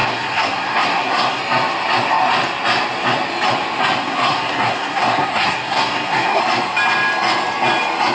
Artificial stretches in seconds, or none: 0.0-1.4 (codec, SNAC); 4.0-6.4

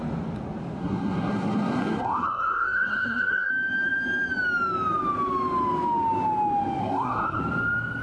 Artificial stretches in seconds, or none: 0.8-3.5 (codec, SNAC); 6.8-7.4

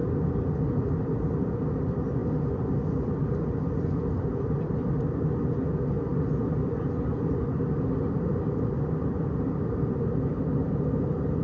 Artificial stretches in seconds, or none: none